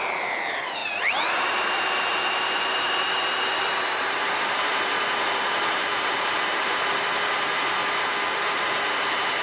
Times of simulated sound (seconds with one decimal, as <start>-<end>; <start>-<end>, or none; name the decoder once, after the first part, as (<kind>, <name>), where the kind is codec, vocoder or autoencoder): 0.0-7.8 (vocoder, BigVGAN v2); 8.4-9.4